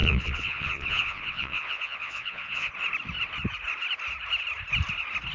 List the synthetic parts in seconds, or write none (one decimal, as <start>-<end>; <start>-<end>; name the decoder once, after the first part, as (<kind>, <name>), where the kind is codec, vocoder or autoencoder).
0.0-2.7 (vocoder, Vocos)